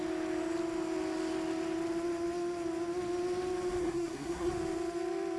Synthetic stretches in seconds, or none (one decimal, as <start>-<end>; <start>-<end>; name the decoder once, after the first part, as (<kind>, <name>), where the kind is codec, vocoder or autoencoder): 3.8-4.5 (codec, SNAC)

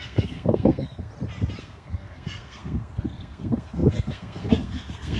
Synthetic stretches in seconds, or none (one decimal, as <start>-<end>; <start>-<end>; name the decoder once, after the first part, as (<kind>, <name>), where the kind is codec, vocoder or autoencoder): 0.0-1.1 (codec, SNAC); 1.6-5.2

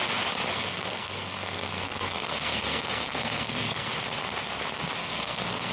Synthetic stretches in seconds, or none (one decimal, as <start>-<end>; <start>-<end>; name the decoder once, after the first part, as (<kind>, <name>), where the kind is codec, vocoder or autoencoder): 0.5-3.9 (codec, SNAC); 5.0-5.7

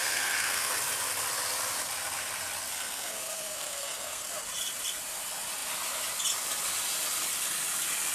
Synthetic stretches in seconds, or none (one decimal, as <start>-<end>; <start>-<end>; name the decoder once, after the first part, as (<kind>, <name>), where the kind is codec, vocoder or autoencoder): 0.0-0.8 (codec, SNAC); 2.7-4.3